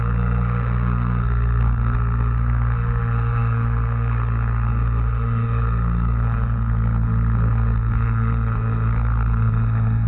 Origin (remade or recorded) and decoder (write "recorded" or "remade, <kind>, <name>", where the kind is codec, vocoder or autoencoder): remade, codec, SNAC